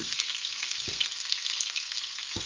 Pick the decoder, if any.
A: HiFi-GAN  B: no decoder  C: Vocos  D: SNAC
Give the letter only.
D